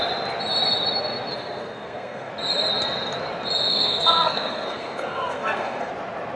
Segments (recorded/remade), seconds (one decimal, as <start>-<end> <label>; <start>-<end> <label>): 0.0-1.3 recorded; 1.3-2.3 remade; 2.3-3.7 recorded; 3.7-5.9 remade; 5.9-6.4 recorded